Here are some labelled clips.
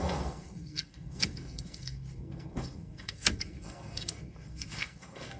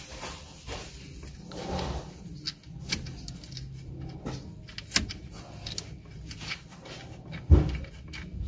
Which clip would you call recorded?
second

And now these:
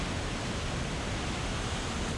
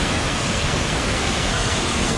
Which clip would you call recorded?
first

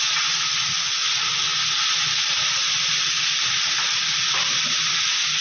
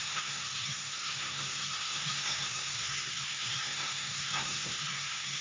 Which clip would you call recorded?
first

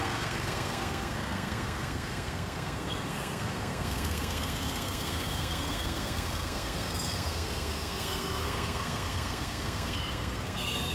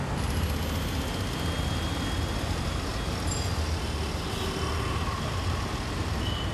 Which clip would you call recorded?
second